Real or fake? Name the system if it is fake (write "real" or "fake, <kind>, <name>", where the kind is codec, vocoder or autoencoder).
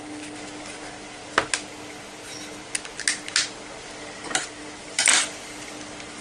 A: real